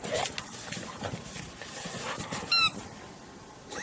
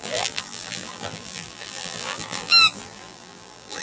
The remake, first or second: second